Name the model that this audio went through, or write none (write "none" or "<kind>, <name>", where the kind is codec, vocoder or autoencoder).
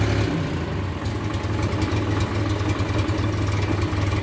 none